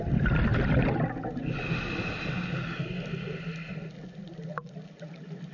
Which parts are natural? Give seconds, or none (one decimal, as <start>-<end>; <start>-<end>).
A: 0.0-5.5